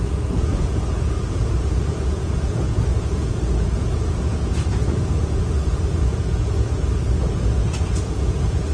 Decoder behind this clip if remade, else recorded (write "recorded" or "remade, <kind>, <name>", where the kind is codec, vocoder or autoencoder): remade, vocoder, Vocos